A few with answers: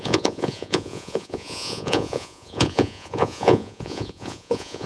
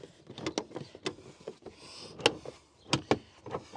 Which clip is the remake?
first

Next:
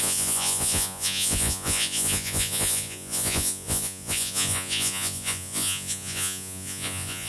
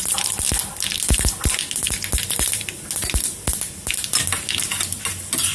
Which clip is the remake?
first